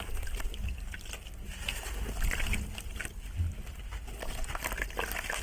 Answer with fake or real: real